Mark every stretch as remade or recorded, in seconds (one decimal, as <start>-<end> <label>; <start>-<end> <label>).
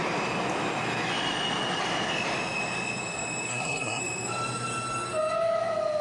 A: 0.0-3.5 recorded; 3.5-4.0 remade; 4.0-6.0 recorded